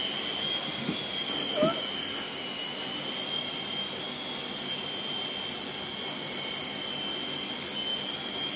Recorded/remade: recorded